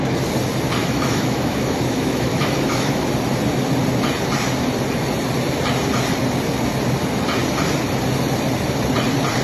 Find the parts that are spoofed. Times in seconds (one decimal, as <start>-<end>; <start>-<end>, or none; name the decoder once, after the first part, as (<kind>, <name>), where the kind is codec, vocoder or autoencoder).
0.8-3.1 (autoencoder, DAC-VAE)